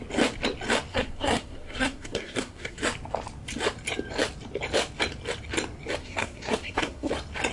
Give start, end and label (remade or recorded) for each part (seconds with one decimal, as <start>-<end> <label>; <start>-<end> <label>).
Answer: 0.0-0.9 recorded; 0.9-2.8 remade; 2.8-6.0 recorded; 6.0-7.1 remade; 7.1-7.5 recorded